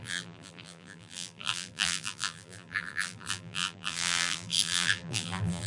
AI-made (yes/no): yes